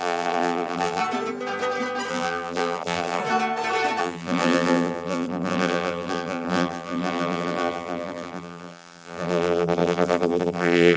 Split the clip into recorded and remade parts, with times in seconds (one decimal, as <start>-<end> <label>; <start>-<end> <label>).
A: 0.0-1.0 remade; 1.0-2.1 recorded; 2.1-3.2 remade; 3.2-4.0 recorded; 4.0-11.0 remade